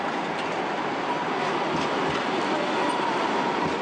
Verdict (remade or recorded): recorded